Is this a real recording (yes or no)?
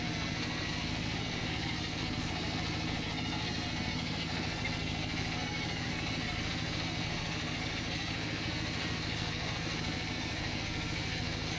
no